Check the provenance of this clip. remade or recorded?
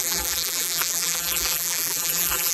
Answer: remade